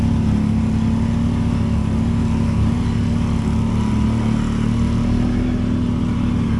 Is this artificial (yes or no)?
no